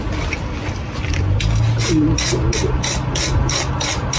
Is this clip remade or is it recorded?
recorded